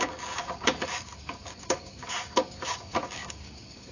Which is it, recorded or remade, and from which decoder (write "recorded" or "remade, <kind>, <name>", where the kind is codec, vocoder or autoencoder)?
remade, codec, DAC